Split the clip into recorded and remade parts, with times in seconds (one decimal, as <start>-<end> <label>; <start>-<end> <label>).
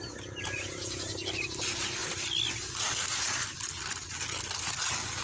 0.0-5.2 recorded